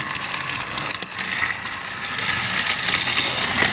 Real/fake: real